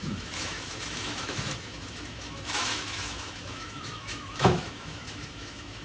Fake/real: fake